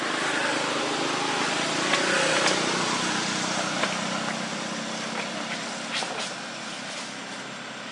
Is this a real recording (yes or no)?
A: yes